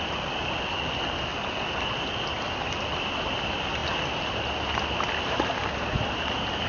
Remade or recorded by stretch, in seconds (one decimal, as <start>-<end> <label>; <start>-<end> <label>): 0.0-6.7 recorded